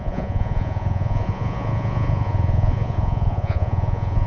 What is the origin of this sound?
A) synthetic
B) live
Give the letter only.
A